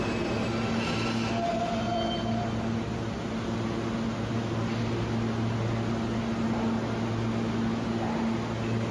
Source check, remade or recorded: recorded